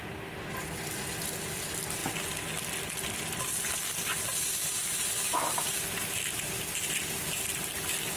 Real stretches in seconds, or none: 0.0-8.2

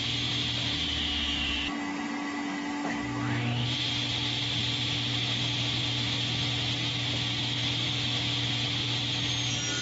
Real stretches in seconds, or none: 0.0-9.8

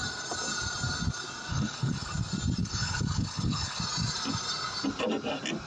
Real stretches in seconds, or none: 0.0-1.5; 2.1-2.6; 3.8-5.7

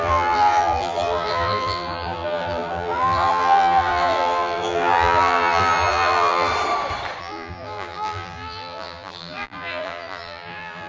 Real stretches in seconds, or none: 6.5-7.2